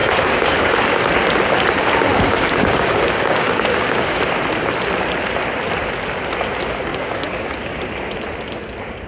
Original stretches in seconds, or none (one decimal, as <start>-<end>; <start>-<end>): 1.1-2.0; 4.2-6.9; 7.8-9.1